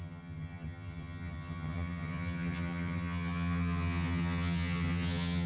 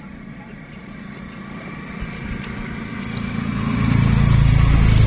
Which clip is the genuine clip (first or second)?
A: second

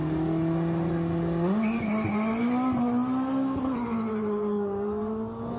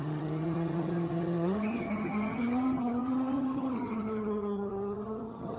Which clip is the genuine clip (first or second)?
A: first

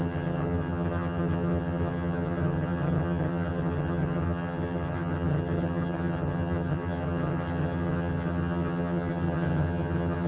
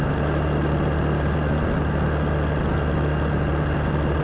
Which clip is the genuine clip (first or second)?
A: second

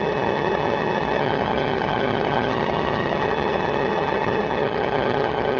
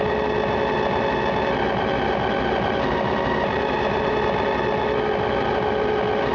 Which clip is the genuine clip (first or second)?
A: second